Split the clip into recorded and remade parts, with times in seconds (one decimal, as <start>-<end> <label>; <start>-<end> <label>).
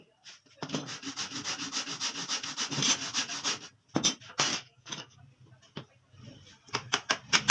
0.0-4.5 recorded; 4.5-5.2 remade; 5.2-7.5 recorded